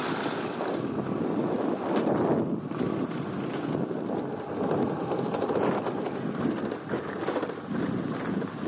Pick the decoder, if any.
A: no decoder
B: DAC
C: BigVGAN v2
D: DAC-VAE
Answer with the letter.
A